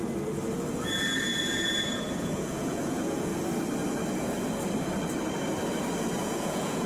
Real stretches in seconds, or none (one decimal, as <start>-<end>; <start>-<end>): 0.0-0.7; 3.3-6.2